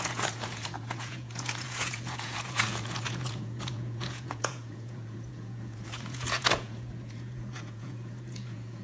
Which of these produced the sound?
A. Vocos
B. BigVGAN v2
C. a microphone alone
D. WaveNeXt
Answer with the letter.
A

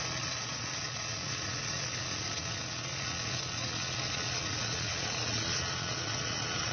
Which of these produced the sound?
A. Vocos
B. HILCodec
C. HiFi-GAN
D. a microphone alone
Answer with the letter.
A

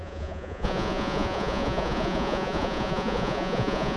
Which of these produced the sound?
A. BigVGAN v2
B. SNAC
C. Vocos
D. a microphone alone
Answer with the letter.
C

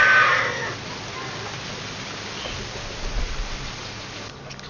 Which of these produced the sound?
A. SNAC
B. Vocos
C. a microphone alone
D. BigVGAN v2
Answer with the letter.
C